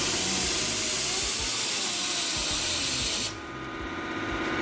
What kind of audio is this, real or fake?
real